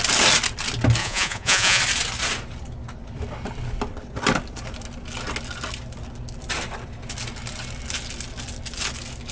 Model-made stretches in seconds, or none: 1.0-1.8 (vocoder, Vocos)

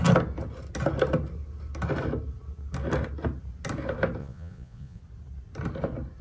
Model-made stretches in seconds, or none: 4.2-5.0 (vocoder, Vocos)

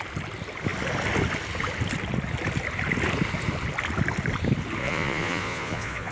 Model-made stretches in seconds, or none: 4.8-6.1 (vocoder, Vocos)